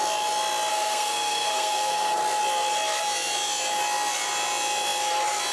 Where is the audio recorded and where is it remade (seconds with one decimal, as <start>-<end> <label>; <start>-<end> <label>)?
0.0-0.7 recorded; 0.7-2.2 remade; 2.2-5.5 recorded